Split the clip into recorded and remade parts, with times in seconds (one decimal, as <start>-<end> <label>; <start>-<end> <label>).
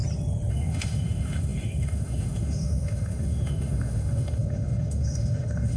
0.0-0.5 recorded; 0.5-5.8 remade